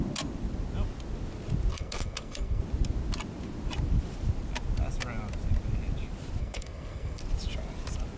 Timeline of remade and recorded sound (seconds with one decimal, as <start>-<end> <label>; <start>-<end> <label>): 0.0-1.7 recorded; 1.7-2.6 remade; 2.6-6.4 recorded; 6.4-7.2 remade; 7.2-8.2 recorded